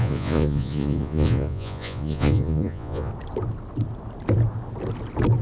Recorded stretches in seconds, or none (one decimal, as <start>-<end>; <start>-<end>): 3.1-5.4